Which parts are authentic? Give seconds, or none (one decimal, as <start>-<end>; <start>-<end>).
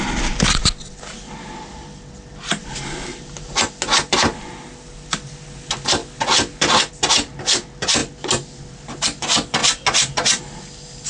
0.0-11.1